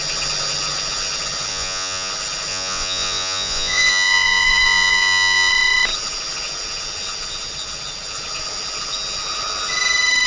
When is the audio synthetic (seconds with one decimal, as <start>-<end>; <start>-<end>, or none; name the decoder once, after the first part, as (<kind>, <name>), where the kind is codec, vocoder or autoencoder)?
1.5-2.1 (vocoder, Vocos); 2.5-5.5